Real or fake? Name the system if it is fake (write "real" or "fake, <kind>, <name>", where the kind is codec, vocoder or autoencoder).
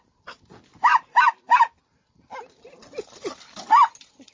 real